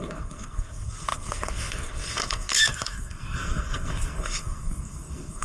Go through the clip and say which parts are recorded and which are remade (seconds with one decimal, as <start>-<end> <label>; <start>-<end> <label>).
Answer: 0.0-5.4 remade